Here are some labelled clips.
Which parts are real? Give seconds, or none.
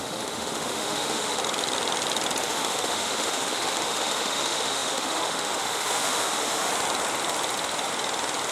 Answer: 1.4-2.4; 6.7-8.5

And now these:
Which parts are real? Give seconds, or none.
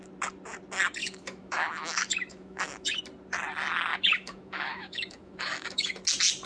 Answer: 0.0-1.0; 3.0-3.9; 6.0-6.5